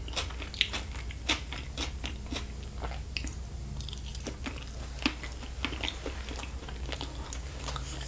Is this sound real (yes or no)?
yes